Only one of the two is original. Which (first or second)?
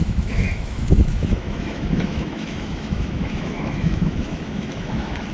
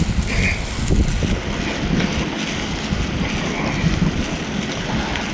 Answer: second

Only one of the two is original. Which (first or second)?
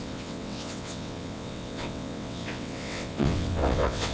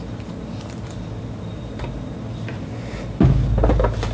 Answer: second